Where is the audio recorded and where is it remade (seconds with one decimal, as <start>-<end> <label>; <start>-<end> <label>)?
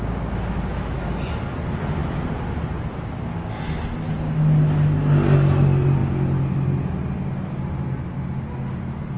0.0-9.2 recorded